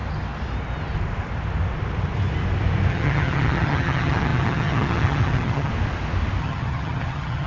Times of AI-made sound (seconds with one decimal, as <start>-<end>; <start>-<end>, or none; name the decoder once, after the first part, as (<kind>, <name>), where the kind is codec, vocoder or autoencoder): 2.9-5.7 (vocoder, HiFi-GAN); 6.4-7.5

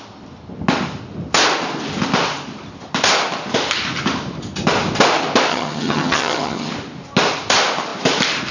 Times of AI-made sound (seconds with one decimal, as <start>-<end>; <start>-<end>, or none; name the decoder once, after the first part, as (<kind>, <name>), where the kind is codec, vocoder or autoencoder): 5.5-6.7 (vocoder, HiFi-GAN)